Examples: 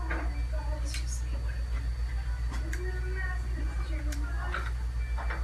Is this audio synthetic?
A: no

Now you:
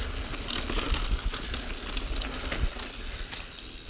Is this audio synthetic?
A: no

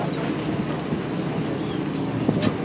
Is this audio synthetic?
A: no